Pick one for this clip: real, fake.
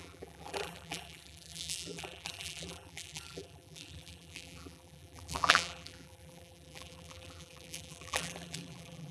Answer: fake